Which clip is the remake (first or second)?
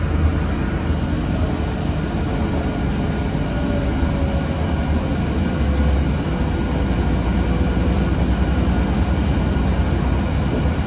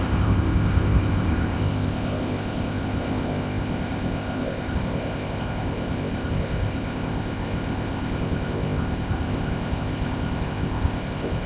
second